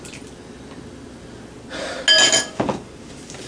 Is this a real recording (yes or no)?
yes